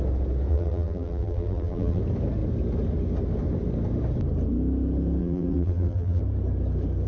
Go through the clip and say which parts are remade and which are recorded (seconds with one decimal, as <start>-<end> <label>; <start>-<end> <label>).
0.0-0.5 recorded; 0.5-2.0 remade; 2.0-5.2 recorded; 5.2-6.2 remade; 6.2-7.1 recorded